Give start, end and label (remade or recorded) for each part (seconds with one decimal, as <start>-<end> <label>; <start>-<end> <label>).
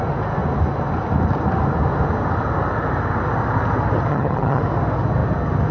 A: 0.0-4.1 recorded; 4.1-4.6 remade; 4.6-5.7 recorded